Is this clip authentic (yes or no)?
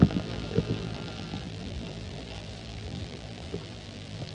no